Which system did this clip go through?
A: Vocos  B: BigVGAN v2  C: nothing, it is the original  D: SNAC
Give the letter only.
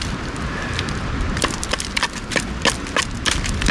C